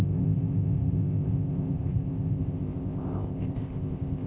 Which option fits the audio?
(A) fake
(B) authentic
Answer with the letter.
A